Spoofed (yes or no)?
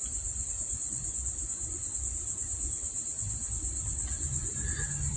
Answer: no